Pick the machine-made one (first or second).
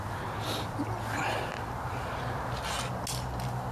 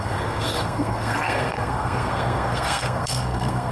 second